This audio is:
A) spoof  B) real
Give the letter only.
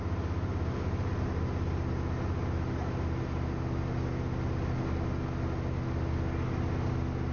B